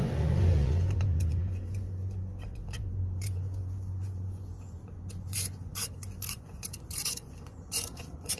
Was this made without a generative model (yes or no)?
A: no